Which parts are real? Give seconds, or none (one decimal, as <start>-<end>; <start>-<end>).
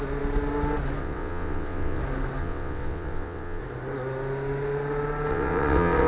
0.0-1.0; 2.0-2.4; 3.6-5.3